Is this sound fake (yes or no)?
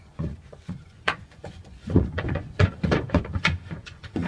yes